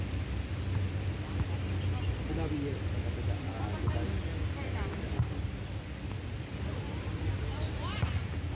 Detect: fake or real real